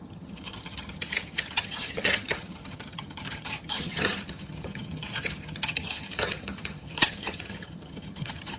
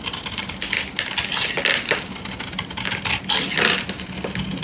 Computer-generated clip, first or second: first